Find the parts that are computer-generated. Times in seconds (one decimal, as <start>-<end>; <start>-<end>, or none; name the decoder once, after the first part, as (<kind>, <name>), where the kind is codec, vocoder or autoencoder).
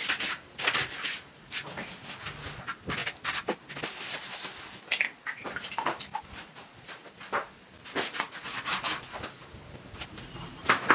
none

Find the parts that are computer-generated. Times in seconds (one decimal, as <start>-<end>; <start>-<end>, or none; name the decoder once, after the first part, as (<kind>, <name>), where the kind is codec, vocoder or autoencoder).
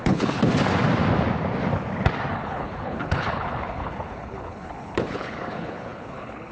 0.0-0.5 (codec, HILCodec); 2.3-6.5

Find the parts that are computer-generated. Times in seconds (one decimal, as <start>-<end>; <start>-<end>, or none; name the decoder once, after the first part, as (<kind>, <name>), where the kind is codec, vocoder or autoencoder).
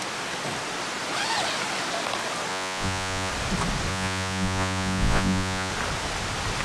2.5-3.3 (vocoder, Vocos); 3.9-5.7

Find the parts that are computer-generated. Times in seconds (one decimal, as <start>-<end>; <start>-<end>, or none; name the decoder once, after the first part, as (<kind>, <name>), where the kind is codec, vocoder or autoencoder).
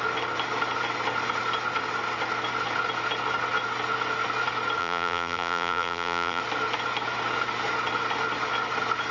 4.8-6.4 (vocoder, BigVGAN v2)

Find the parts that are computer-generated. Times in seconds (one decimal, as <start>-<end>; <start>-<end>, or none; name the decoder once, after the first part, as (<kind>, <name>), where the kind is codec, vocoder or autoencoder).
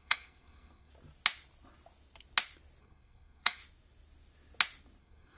0.0-0.9 (codec, SNAC); 2.8-3.6; 5.0-5.4